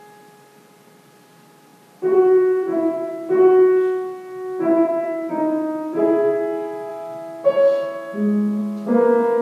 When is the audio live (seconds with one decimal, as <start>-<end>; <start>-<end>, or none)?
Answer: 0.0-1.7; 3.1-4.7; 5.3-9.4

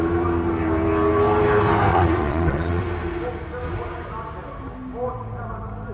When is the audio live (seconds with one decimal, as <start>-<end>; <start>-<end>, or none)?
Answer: 0.0-1.9; 2.8-5.9

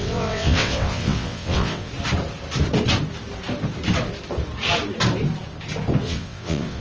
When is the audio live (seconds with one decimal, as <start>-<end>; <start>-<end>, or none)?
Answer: 1.9-6.0

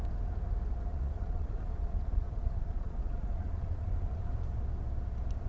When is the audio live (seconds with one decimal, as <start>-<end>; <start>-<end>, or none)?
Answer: 0.0-0.9; 4.2-5.5

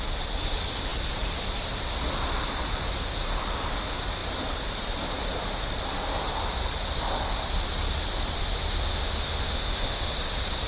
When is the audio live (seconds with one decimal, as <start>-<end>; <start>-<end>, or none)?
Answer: 0.0-8.9; 10.1-10.7

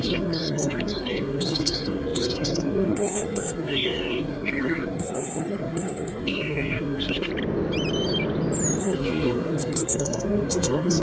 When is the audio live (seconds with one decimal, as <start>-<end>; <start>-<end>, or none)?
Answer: 7.3-8.8